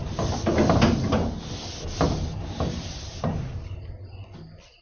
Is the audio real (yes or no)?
yes